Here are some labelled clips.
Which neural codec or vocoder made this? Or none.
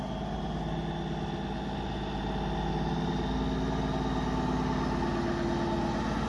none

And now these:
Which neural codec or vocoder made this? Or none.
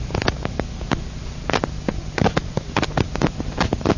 none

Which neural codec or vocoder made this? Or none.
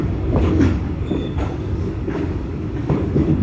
codec, DAC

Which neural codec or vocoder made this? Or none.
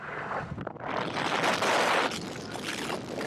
none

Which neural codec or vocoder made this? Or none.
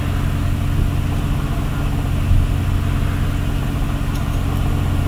none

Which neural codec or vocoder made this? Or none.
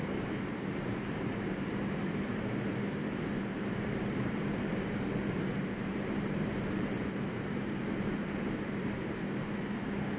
vocoder, BigVGAN v2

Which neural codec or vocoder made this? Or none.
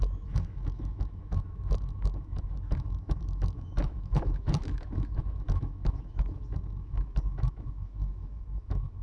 autoencoder, DAC-VAE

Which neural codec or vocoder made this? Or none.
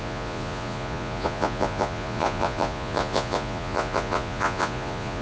vocoder, Vocos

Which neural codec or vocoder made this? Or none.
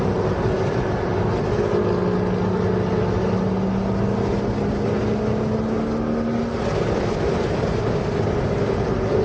none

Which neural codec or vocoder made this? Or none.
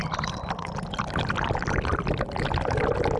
none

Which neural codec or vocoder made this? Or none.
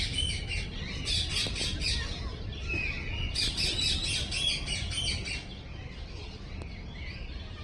none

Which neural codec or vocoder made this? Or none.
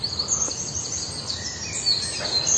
none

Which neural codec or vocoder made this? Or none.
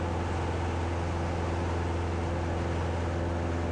none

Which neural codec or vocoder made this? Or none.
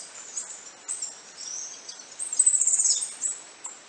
none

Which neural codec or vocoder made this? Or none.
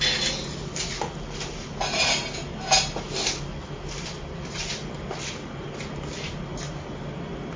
none